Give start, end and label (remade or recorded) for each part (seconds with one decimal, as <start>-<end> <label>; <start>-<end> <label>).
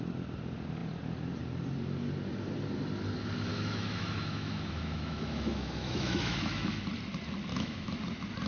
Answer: 0.0-3.5 recorded; 3.5-6.8 remade; 6.8-7.5 recorded; 7.5-8.0 remade; 8.0-8.5 recorded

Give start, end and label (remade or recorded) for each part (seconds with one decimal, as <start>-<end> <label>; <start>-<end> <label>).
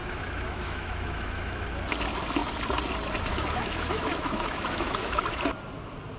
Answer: 0.0-1.7 remade; 1.7-3.3 recorded; 3.3-5.2 remade; 5.2-6.2 recorded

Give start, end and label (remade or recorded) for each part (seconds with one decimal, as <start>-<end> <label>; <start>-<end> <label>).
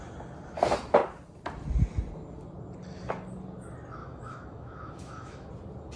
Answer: 0.0-4.0 recorded; 4.0-5.5 remade; 5.5-6.0 recorded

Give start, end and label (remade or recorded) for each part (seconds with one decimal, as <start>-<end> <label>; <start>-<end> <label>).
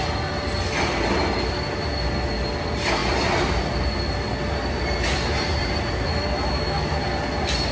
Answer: 0.0-6.1 recorded; 6.1-6.9 remade; 6.9-7.7 recorded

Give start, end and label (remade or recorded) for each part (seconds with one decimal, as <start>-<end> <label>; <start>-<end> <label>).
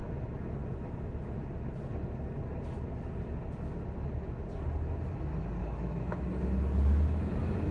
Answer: 0.0-5.6 recorded; 5.6-6.2 remade; 6.2-7.7 recorded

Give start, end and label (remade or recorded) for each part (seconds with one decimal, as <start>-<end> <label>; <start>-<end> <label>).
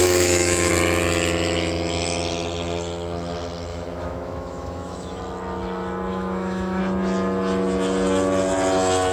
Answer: 0.0-0.7 remade; 0.7-3.7 recorded; 3.7-5.2 remade; 5.2-6.1 recorded; 6.1-6.8 remade; 6.8-9.1 recorded